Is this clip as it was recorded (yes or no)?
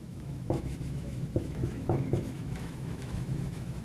no